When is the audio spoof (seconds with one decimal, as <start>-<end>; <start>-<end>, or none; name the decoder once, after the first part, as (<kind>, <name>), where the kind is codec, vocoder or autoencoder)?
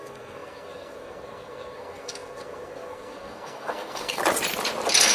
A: 0.0-4.2 (codec, SNAC)